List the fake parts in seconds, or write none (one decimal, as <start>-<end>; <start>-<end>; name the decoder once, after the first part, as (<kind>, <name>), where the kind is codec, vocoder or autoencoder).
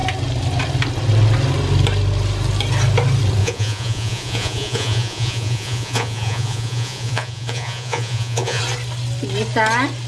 3.4-8.6 (vocoder, Vocos)